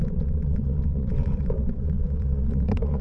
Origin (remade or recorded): remade